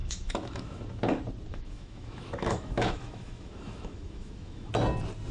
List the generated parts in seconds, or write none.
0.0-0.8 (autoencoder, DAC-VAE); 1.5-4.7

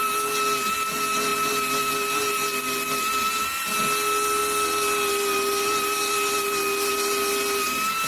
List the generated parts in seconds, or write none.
none